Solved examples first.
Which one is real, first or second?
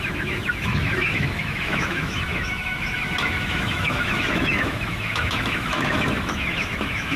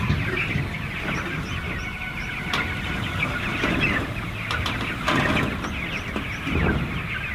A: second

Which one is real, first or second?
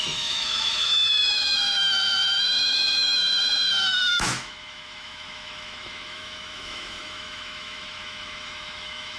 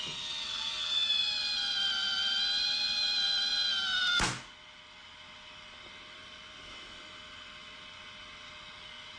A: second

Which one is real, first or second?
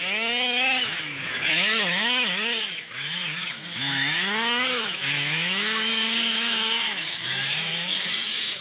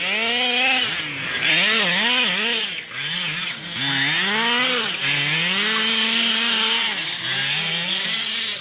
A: second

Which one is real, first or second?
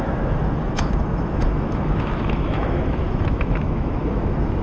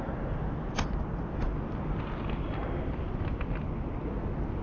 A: second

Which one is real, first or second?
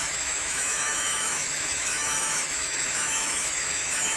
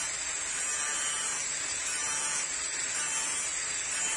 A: second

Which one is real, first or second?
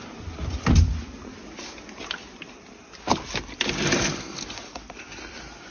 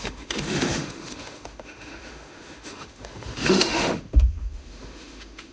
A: first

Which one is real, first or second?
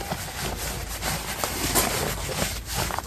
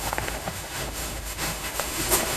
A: first